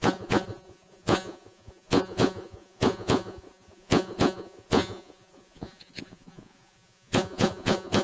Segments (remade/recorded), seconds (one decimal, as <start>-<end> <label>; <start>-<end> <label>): 0.0-8.0 remade